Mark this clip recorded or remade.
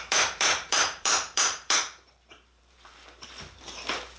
remade